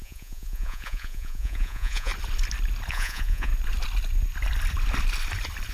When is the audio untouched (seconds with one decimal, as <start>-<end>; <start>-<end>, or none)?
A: 2.1-2.9; 3.5-5.7